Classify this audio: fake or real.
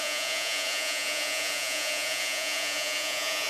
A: fake